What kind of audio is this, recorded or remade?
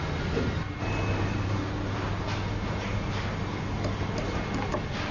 recorded